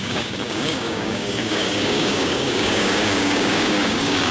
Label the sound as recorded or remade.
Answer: remade